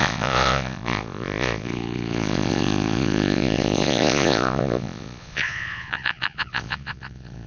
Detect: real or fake fake